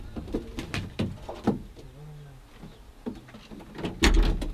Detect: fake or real real